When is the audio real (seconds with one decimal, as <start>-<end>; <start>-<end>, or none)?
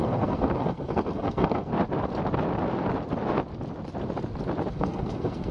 1.7-4.7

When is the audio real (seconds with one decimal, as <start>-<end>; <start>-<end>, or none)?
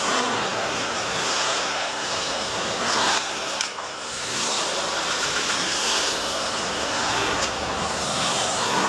4.6-5.5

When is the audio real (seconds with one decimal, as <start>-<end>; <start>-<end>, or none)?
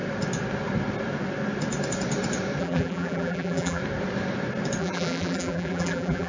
0.0-2.6; 3.8-4.8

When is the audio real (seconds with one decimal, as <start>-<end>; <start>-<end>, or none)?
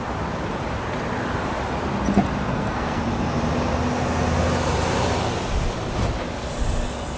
0.0-2.5; 3.0-7.2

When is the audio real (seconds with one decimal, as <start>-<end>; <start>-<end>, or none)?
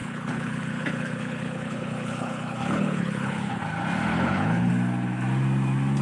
3.6-4.1; 4.7-6.0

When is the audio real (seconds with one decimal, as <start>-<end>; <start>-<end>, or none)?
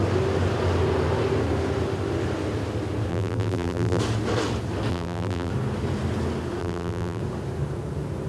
0.0-3.1; 4.0-4.9; 5.5-6.6; 7.2-8.3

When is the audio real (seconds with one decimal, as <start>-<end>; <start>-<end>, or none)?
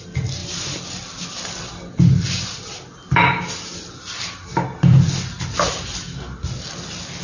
0.0-7.2